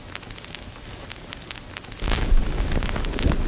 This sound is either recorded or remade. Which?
recorded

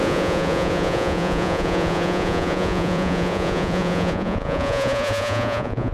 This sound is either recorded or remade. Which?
remade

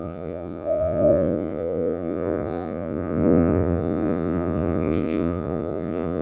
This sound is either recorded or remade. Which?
remade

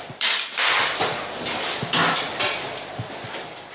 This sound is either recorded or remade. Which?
recorded